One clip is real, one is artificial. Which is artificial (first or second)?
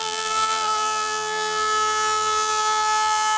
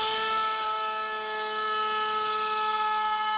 first